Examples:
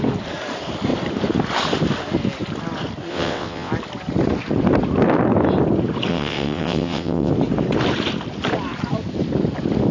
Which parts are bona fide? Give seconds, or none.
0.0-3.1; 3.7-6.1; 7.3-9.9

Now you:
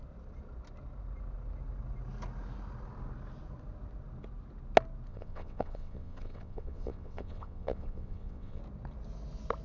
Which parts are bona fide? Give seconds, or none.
0.0-5.1; 8.6-9.6